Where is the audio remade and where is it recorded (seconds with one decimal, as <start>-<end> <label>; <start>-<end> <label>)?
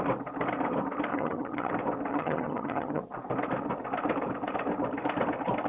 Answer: 0.0-1.1 recorded; 1.1-1.7 remade; 1.7-2.1 recorded; 2.1-3.0 remade; 3.0-5.7 recorded